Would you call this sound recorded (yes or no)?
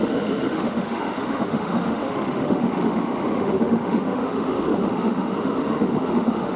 no